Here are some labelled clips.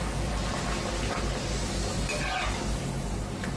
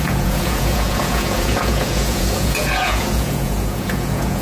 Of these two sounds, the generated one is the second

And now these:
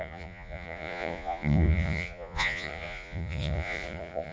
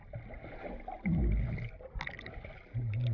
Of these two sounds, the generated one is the first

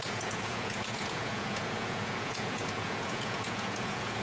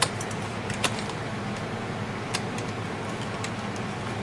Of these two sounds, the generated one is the first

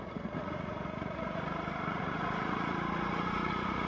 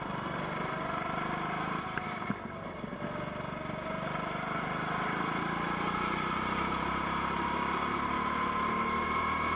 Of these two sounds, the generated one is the first